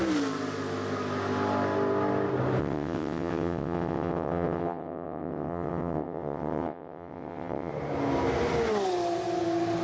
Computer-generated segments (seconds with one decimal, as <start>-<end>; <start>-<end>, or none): 2.6-7.7